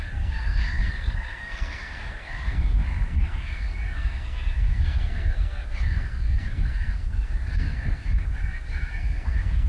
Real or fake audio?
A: fake